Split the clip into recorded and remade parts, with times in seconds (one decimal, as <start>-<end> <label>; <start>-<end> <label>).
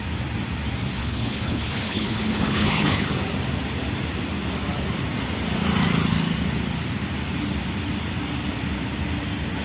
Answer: 0.0-1.0 recorded; 1.0-3.1 remade; 3.1-9.6 recorded